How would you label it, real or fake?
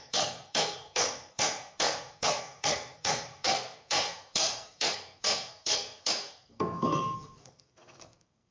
fake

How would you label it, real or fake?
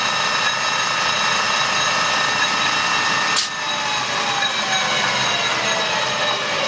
real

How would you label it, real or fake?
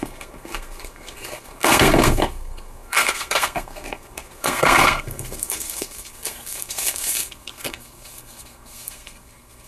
fake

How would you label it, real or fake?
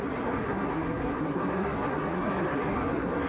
fake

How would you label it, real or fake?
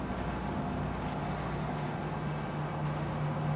real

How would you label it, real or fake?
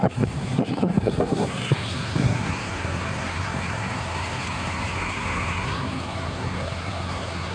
fake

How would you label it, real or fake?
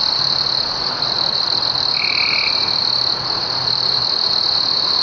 real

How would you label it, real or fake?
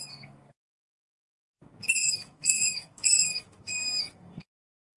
fake